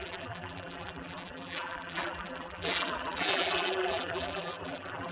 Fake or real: fake